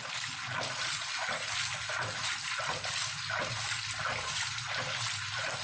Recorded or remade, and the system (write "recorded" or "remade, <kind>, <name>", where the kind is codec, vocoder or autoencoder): recorded